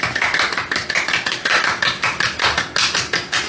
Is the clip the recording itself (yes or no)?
yes